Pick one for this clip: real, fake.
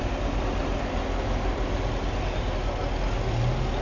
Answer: real